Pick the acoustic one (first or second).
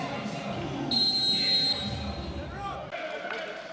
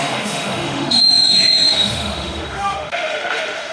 first